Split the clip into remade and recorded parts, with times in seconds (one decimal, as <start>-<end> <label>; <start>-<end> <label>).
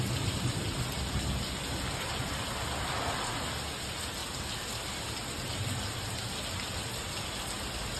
0.0-8.0 recorded